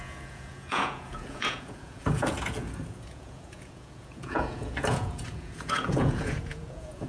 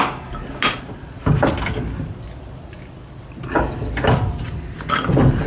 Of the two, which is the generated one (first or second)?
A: first